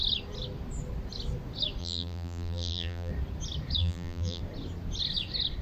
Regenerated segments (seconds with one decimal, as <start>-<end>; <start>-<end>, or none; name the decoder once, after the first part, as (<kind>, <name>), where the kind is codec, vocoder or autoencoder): 1.8-3.1 (vocoder, BigVGAN v2); 3.8-4.4